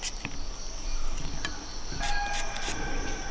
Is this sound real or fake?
real